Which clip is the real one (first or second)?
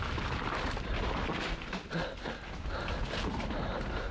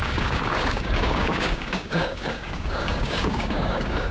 first